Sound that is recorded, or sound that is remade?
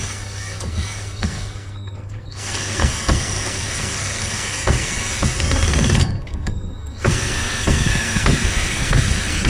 remade